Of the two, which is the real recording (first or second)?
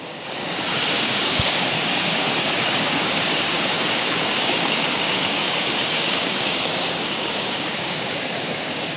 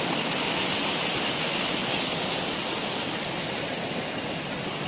second